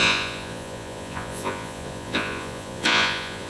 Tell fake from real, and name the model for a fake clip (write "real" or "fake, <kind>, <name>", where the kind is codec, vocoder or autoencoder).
fake, vocoder, Vocos